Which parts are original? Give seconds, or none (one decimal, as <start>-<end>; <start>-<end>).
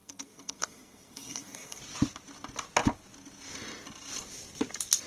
1.8-5.1